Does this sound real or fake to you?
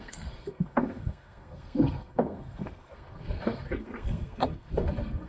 fake